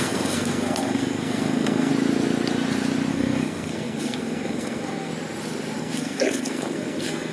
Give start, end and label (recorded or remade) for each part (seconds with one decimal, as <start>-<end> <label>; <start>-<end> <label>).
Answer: 0.0-1.9 remade; 1.9-3.1 recorded; 3.1-5.1 remade; 5.1-5.8 recorded; 5.8-7.3 remade